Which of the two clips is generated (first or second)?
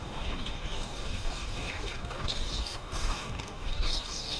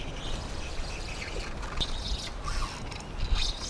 first